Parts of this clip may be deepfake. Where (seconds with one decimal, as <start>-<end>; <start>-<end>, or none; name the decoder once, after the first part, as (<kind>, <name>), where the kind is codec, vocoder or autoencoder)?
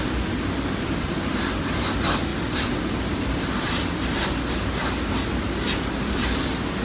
none